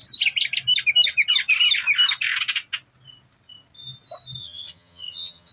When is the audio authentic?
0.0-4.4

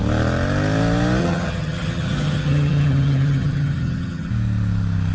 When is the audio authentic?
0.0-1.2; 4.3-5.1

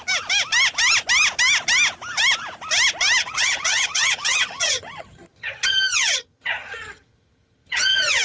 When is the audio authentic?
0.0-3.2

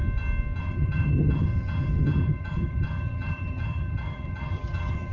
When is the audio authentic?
0.0-0.6

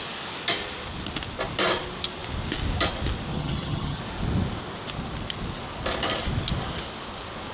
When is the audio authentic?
0.0-3.3; 4.0-7.5